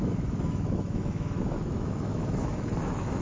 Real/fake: fake